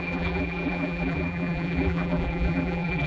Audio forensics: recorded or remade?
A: remade